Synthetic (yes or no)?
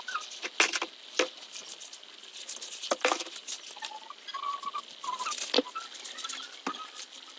no